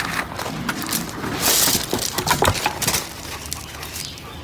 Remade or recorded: recorded